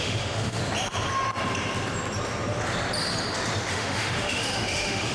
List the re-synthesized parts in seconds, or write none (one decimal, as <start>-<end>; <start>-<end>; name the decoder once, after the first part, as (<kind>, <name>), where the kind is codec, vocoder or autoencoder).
0.0-0.6 (autoencoder, DAC-VAE); 3.7-5.1